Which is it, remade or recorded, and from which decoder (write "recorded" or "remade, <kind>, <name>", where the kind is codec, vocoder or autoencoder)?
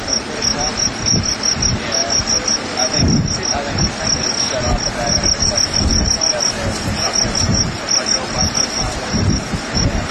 recorded